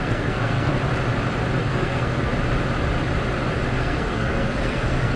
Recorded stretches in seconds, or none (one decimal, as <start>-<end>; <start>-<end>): 0.7-1.6; 2.3-3.8